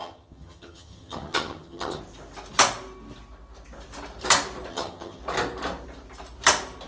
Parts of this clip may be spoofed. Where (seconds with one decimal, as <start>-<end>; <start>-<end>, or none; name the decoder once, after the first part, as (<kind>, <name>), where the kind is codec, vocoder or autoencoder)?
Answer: 0.0-2.0 (vocoder, HiFi-GAN); 4.7-5.2